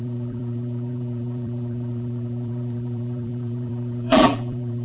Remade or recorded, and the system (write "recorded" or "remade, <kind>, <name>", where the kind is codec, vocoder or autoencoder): remade, vocoder, BigVGAN v2